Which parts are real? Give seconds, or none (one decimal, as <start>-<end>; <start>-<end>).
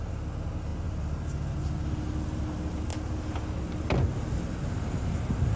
0.0-5.6